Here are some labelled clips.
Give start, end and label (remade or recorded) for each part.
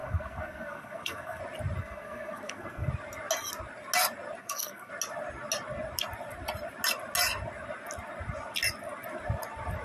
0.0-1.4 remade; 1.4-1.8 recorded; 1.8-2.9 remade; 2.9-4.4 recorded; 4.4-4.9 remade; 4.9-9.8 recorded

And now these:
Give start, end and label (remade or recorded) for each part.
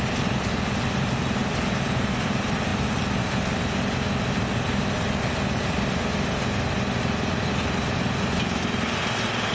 0.0-9.5 recorded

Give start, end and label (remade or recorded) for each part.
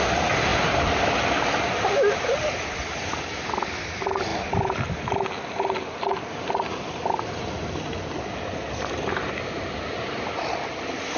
0.0-11.2 recorded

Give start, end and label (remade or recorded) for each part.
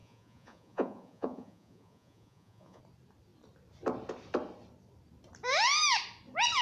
0.0-2.8 remade; 2.8-6.6 recorded